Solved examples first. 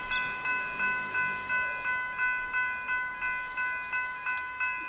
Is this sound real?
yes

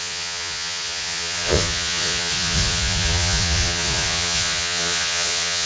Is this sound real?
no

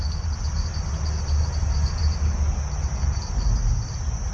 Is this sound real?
yes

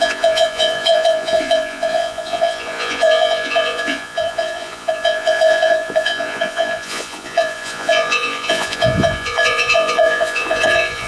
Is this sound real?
no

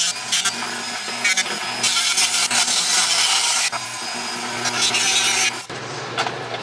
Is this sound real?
yes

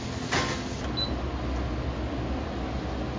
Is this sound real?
yes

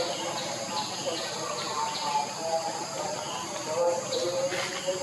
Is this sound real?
yes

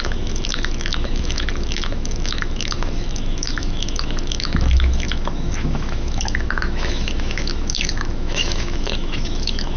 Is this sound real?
no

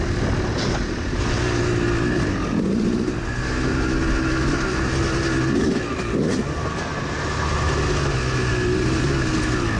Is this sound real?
yes